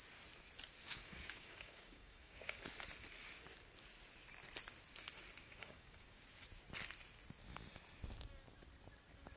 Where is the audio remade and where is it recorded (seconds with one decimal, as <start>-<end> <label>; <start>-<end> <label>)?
0.0-0.8 recorded; 0.8-2.6 remade; 2.6-5.4 recorded; 5.4-6.2 remade; 6.2-9.4 recorded

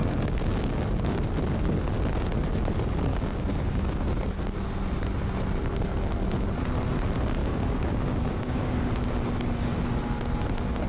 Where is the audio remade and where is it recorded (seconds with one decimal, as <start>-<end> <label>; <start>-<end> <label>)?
0.0-1.2 remade; 1.2-3.1 recorded; 3.1-3.8 remade; 3.8-7.4 recorded; 7.4-8.9 remade; 8.9-10.9 recorded

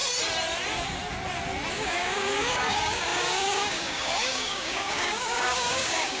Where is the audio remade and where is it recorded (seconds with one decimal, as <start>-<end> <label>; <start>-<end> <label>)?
0.0-1.7 recorded; 1.7-6.2 remade

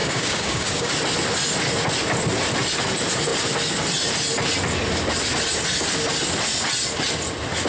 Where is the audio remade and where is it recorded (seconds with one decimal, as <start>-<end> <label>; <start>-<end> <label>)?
0.0-0.9 remade; 0.9-7.7 recorded

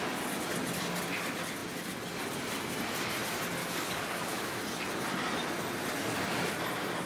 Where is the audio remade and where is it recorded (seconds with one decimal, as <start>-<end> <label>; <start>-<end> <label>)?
0.0-3.6 recorded; 3.6-4.6 remade; 4.6-7.1 recorded

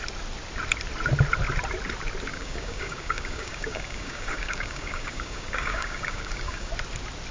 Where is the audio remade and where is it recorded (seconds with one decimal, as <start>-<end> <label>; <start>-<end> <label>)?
0.0-2.3 recorded; 2.3-6.7 remade; 6.7-7.3 recorded

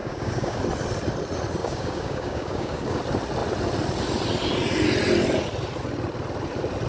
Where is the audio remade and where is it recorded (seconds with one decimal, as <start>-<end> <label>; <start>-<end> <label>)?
0.0-0.6 remade; 0.6-1.6 recorded; 1.6-3.0 remade; 3.0-6.9 recorded